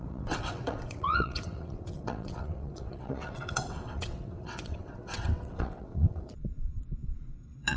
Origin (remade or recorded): remade